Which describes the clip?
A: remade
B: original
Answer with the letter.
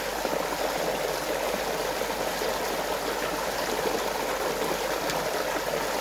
B